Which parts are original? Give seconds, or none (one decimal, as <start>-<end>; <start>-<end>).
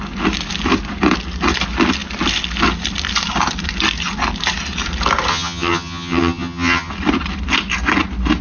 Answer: 0.0-5.3; 6.9-8.4